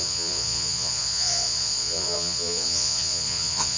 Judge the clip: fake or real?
fake